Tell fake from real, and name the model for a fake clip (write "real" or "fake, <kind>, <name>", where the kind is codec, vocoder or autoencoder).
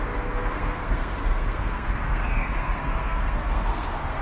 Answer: fake, codec, SNAC